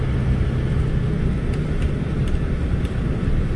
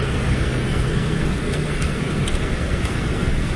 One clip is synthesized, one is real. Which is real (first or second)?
first